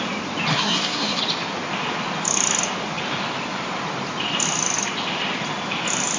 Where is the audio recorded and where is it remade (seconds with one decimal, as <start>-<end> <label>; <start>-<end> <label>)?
0.0-0.5 recorded; 0.5-1.2 remade; 1.2-6.2 recorded